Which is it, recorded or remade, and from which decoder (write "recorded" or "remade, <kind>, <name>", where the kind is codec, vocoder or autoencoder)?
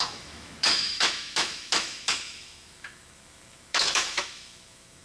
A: remade, autoencoder, DAC-VAE